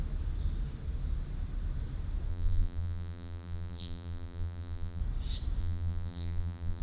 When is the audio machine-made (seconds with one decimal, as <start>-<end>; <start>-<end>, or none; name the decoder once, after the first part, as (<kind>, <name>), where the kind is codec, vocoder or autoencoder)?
2.3-5.0 (vocoder, BigVGAN v2); 5.6-6.8